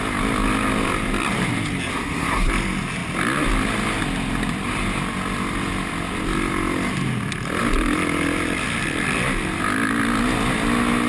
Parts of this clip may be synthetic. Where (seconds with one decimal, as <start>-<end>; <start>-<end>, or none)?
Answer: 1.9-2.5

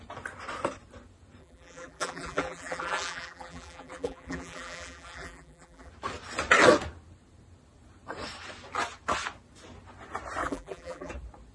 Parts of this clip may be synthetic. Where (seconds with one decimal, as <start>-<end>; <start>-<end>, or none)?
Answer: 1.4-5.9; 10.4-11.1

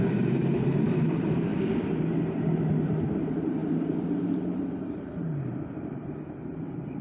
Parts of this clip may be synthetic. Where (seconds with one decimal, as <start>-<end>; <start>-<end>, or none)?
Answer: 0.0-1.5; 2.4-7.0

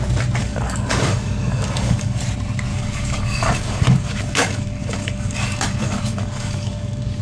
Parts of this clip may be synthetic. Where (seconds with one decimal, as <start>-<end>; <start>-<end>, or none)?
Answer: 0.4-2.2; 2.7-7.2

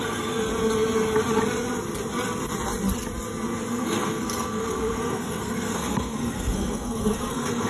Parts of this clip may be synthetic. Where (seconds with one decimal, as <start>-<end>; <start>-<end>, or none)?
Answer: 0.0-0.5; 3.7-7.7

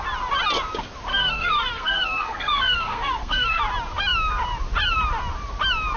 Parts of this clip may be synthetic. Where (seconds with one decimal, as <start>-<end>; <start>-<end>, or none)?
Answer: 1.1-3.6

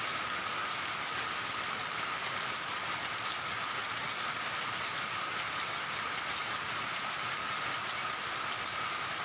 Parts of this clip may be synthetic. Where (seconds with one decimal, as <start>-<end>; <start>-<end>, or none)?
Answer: 6.4-7.1

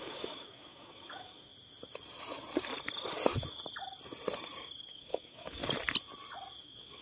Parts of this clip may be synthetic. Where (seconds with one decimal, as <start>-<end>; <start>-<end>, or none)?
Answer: 0.0-1.5; 4.8-5.6; 6.6-7.0